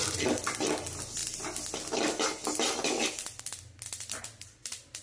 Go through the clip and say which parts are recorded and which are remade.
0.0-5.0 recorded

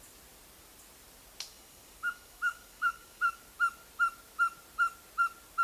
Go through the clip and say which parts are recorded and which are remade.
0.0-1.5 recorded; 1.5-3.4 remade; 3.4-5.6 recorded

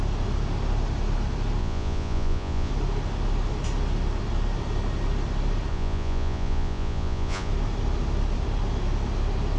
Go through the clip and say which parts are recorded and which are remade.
0.0-1.6 recorded; 1.6-2.7 remade; 2.7-5.7 recorded; 5.7-7.5 remade; 7.5-9.6 recorded